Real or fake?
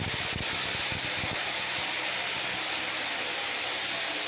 real